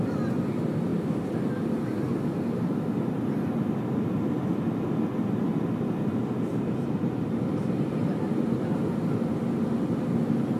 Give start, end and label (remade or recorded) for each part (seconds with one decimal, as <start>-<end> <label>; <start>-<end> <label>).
0.0-6.5 recorded; 6.5-8.4 remade; 8.4-10.6 recorded